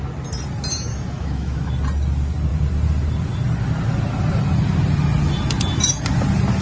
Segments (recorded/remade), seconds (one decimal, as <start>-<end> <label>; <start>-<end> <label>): 0.0-0.9 recorded; 0.9-1.7 remade; 1.7-6.6 recorded